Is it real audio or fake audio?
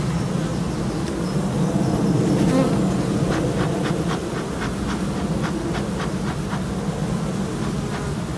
real